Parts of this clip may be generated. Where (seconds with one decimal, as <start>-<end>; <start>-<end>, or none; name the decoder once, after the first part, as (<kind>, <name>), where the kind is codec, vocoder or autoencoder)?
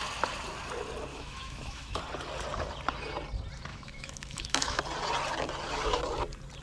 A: 1.1-2.0 (autoencoder, DAC-VAE); 3.7-4.8